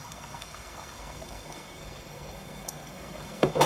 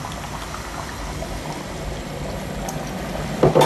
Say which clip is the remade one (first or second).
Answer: first